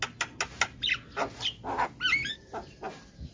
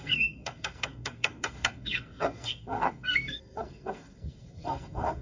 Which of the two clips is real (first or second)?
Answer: first